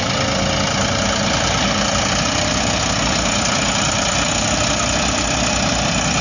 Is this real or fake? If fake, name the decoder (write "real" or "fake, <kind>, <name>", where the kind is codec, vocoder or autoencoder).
real